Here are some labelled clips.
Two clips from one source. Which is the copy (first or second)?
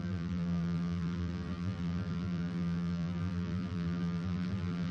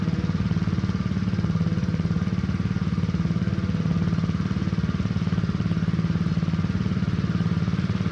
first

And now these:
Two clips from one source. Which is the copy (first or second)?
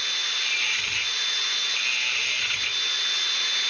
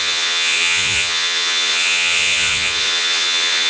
second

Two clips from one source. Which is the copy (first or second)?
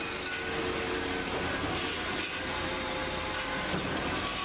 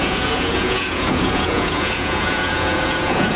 second